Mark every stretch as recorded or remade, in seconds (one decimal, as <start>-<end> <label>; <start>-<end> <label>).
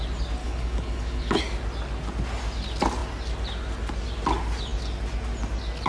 0.0-0.4 recorded; 0.4-1.4 remade; 1.4-5.9 recorded